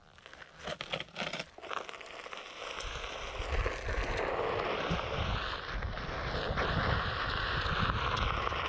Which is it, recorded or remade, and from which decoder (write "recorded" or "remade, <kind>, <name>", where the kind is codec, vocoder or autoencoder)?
recorded